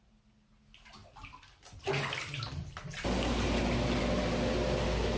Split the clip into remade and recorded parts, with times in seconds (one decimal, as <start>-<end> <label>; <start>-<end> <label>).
0.0-5.2 recorded

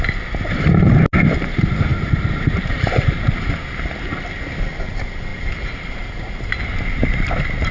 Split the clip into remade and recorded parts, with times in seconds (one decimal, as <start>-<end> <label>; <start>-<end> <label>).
0.0-1.9 recorded; 1.9-3.6 remade; 3.6-5.3 recorded; 5.3-6.6 remade; 6.6-7.7 recorded

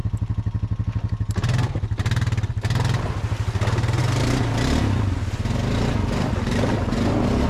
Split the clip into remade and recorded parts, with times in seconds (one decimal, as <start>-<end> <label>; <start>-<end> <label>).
0.0-7.5 recorded

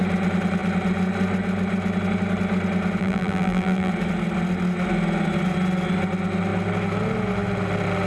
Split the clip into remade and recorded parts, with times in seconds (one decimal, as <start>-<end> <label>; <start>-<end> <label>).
0.0-3.0 recorded; 3.0-3.9 remade; 3.9-8.1 recorded

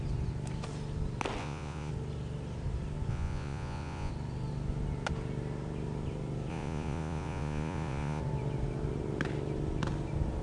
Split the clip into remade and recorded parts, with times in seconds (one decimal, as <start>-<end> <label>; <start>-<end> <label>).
0.0-1.4 recorded; 1.4-1.9 remade; 1.9-3.1 recorded; 3.1-4.1 remade; 4.1-6.5 recorded; 6.5-8.2 remade; 8.2-10.4 recorded

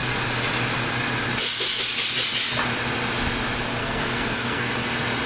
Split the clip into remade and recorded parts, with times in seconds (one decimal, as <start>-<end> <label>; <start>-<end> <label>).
0.0-3.8 recorded; 3.8-4.7 remade; 4.7-5.3 recorded